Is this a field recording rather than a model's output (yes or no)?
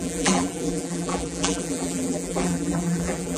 no